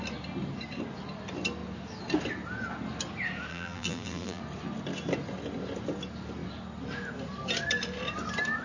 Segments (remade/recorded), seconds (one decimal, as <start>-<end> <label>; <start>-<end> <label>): 0.0-3.5 recorded; 3.5-4.4 remade; 4.4-8.6 recorded